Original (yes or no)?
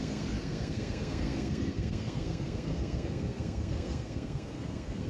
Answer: no